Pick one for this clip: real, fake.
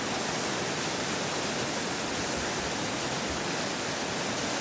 real